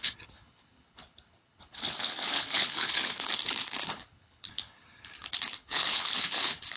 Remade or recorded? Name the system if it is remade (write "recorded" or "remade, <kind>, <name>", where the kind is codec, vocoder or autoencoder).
remade, codec, HILCodec